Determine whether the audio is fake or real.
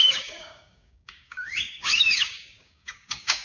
fake